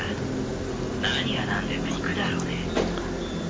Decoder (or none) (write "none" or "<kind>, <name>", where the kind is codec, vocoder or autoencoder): none